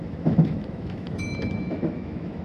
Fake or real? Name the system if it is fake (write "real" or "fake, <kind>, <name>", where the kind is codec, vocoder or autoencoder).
fake, autoencoder, DAC-VAE